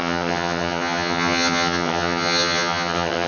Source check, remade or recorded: remade